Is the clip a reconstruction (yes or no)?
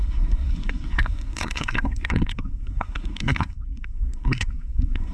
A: yes